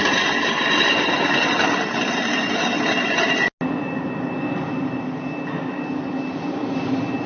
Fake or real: real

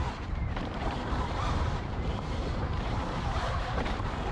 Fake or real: fake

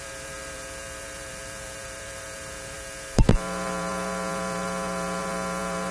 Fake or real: fake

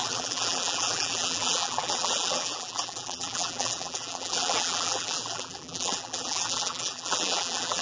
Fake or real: fake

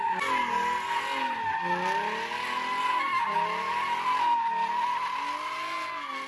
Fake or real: real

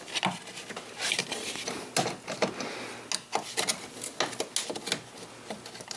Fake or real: real